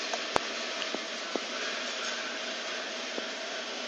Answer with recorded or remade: recorded